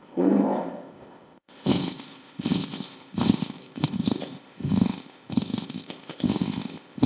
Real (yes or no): no